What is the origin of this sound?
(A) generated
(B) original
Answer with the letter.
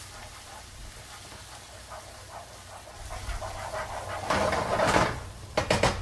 B